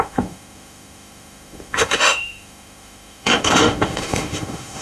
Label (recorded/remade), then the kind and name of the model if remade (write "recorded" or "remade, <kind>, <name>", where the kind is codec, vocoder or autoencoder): remade, autoencoder, DAC-VAE